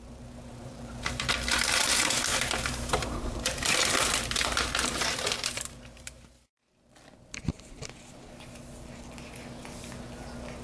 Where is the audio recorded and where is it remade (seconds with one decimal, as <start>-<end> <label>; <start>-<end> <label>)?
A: 0.0-1.3 remade; 1.3-2.3 recorded; 2.3-6.8 remade; 6.8-10.6 recorded